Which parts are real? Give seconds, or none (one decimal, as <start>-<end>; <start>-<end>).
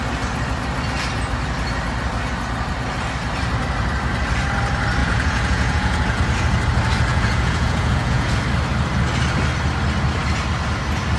0.0-5.0; 6.2-7.1; 8.4-11.2